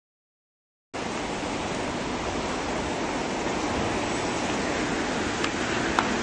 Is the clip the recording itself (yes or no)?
yes